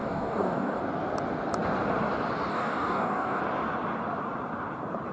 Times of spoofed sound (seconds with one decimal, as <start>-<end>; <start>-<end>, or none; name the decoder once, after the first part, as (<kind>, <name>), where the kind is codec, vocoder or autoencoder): 0.0-0.8 (codec, DAC); 2.5-3.4